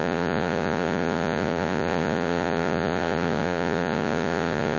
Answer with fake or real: fake